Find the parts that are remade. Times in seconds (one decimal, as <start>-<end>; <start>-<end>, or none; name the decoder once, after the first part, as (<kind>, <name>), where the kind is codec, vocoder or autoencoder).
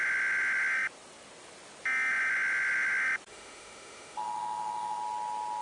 3.3-5.0 (autoencoder, DAC-VAE)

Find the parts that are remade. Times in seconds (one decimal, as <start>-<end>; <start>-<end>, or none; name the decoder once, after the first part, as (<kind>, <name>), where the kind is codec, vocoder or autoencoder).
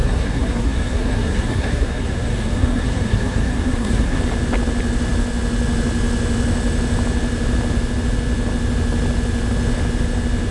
0.0-4.2 (codec, SNAC)